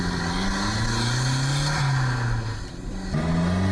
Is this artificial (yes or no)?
no